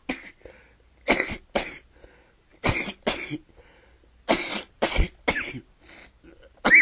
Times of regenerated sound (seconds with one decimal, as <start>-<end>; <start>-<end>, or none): none